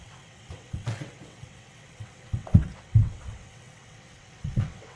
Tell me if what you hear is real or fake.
fake